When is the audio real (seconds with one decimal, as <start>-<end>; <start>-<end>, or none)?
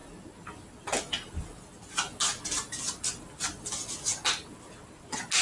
0.0-5.4